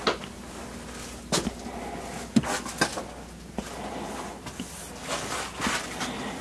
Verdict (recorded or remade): recorded